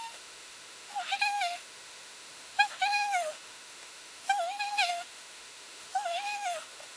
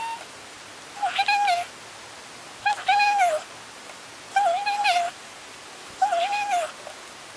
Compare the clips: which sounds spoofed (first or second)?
first